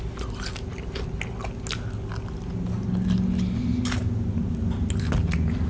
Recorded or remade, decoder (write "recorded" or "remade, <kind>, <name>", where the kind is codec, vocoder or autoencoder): recorded